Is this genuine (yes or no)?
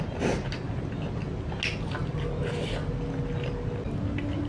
yes